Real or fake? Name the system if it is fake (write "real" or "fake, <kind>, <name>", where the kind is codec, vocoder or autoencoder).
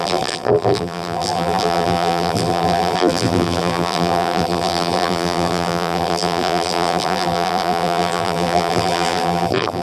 fake, vocoder, BigVGAN v2